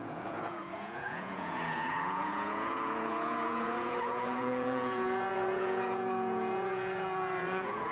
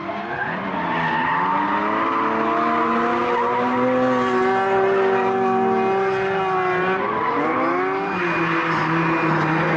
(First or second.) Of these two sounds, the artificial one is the first